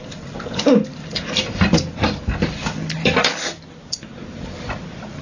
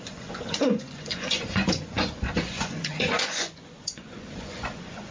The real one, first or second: first